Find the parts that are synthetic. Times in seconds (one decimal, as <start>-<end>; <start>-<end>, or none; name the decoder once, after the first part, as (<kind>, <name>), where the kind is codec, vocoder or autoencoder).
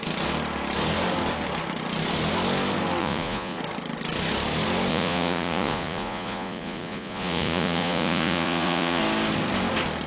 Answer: 3.0-3.6 (vocoder, Vocos); 4.9-9.0